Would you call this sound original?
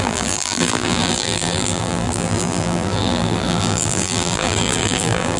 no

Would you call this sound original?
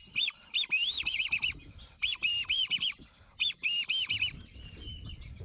no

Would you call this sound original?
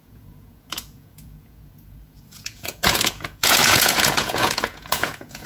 no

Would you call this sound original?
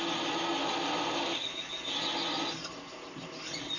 yes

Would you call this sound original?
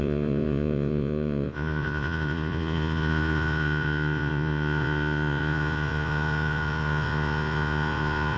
no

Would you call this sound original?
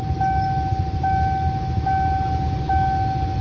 yes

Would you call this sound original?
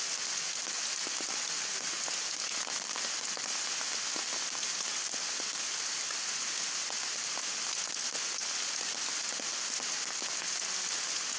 yes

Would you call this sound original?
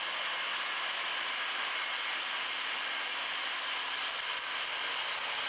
yes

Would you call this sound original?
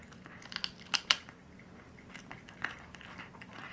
yes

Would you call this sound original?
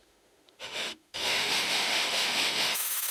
no